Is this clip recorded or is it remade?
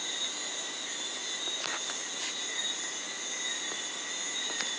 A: recorded